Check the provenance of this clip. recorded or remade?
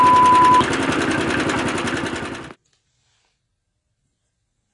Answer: recorded